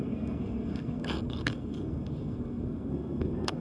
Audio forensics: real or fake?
fake